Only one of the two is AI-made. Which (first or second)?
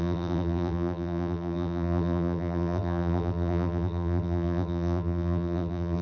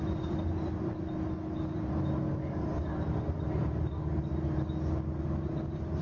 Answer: first